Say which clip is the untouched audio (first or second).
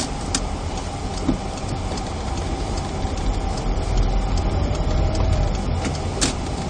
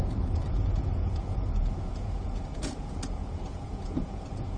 first